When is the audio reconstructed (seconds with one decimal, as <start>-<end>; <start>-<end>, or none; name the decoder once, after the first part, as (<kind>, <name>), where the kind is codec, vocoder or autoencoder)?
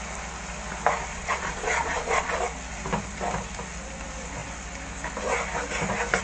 1.1-2.4 (vocoder, Vocos)